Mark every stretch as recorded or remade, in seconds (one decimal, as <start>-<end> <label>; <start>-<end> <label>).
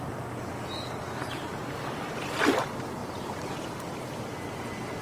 0.0-3.0 recorded; 3.0-3.8 remade; 3.8-5.0 recorded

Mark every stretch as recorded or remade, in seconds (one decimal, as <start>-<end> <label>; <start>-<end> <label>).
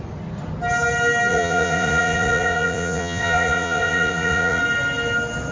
0.0-1.3 recorded; 1.3-4.6 remade; 4.6-5.5 recorded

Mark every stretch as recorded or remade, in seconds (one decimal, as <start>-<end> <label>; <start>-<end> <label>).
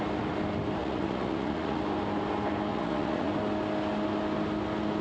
0.0-0.8 recorded; 0.8-1.8 remade; 1.8-2.7 recorded; 2.7-3.3 remade; 3.3-5.0 recorded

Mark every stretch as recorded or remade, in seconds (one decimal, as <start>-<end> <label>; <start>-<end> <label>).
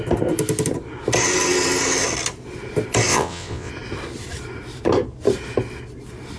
0.0-3.1 recorded; 3.1-3.7 remade; 3.7-6.4 recorded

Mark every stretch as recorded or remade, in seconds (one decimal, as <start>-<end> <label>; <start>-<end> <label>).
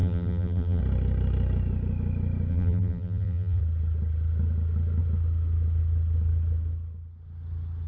0.0-0.8 remade; 0.8-2.5 recorded; 2.5-3.6 remade; 3.6-7.9 recorded